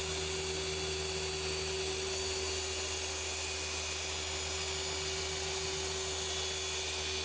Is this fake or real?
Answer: real